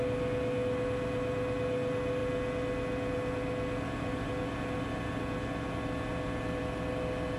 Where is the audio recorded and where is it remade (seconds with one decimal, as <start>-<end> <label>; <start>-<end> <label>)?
0.0-7.4 recorded